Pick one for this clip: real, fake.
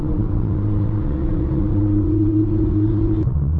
fake